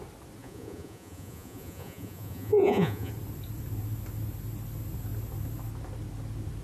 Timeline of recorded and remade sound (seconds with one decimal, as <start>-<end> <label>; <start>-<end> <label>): 0.0-0.4 recorded; 0.4-3.1 remade; 3.1-6.6 recorded